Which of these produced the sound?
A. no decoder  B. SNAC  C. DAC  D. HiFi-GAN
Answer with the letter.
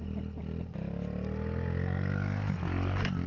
A